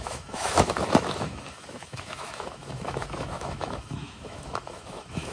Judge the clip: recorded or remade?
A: remade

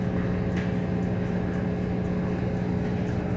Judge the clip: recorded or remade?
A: recorded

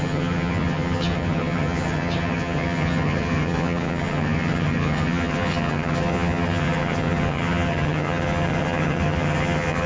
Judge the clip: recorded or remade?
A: remade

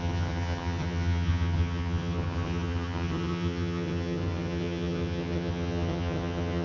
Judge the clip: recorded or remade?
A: remade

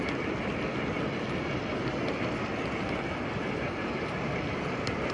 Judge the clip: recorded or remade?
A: remade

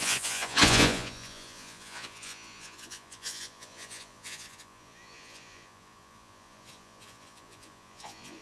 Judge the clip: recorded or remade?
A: remade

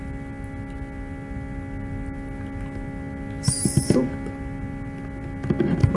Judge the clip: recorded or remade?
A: recorded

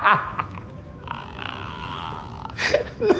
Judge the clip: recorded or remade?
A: remade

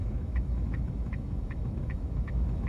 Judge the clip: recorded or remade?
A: remade